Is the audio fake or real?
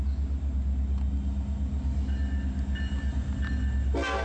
real